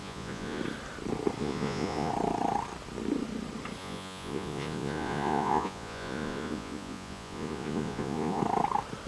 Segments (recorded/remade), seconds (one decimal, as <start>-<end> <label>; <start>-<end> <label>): 0.0-0.6 remade; 0.6-1.4 recorded; 1.4-2.1 remade; 2.1-3.8 recorded; 3.8-8.4 remade; 8.4-9.1 recorded